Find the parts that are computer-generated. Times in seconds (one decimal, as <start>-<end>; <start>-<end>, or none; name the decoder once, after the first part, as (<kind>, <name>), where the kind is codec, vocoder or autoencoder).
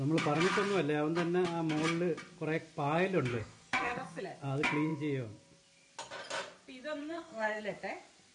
3.3-4.2 (codec, SNAC); 7.0-7.6